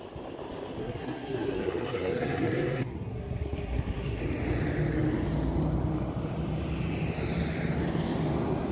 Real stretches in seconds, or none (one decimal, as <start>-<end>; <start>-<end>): 0.0-0.8; 4.2-8.7